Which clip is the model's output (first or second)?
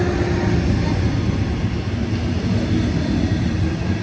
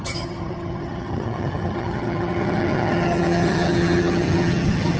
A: second